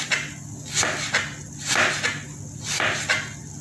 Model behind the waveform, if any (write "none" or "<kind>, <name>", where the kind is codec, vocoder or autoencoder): none